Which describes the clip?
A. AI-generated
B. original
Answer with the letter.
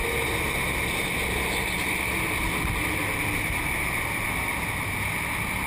B